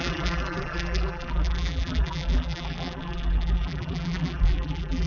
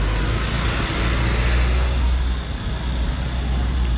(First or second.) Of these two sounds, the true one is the second